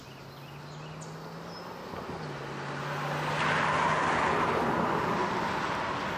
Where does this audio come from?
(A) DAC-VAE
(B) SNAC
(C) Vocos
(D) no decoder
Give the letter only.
D